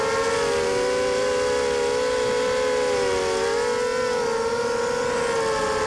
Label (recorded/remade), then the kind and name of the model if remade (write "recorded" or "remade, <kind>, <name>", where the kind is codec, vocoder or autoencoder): recorded